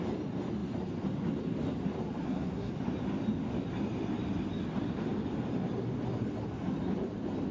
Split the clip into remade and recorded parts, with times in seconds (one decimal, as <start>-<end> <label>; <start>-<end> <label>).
0.0-2.2 recorded; 2.2-2.7 remade; 2.7-7.5 recorded